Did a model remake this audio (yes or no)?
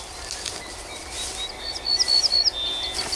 no